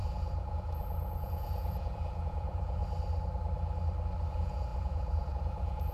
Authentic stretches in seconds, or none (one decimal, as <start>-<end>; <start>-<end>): 2.8-4.3